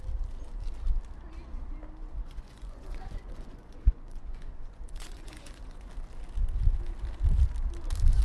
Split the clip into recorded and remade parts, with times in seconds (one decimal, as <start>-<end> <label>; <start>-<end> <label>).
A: 0.0-2.0 recorded; 2.0-5.9 remade; 5.9-8.2 recorded